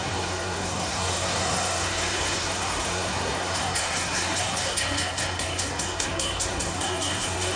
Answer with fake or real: fake